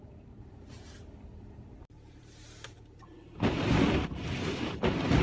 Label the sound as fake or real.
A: fake